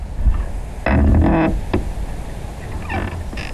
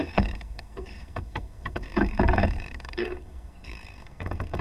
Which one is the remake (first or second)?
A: second